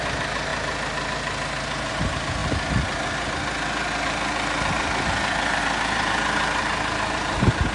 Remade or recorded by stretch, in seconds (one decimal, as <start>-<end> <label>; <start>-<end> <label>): 0.0-7.7 recorded